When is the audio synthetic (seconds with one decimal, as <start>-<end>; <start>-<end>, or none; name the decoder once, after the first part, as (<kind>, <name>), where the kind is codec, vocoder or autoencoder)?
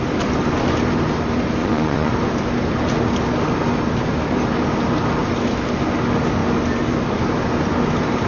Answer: 1.6-2.1 (vocoder, Vocos)